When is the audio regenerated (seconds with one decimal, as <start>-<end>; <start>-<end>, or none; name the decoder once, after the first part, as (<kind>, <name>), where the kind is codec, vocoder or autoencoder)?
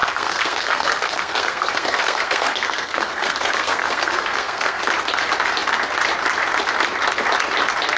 0.0-4.8 (codec, SNAC)